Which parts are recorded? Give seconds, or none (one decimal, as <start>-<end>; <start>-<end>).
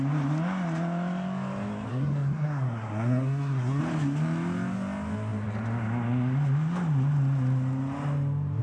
0.0-1.9; 3.8-8.6